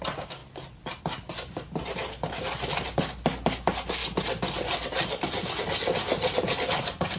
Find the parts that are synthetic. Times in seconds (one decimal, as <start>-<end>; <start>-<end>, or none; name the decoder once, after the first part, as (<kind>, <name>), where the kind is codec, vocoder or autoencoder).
0.0-4.0 (vocoder, BigVGAN v2)